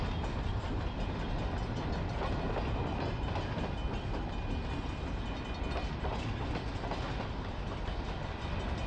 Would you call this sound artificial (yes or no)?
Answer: no